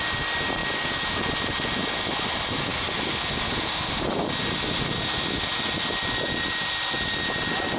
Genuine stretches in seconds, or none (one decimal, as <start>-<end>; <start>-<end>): 0.0-7.8